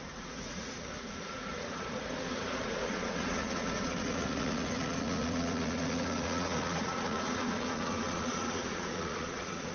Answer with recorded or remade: remade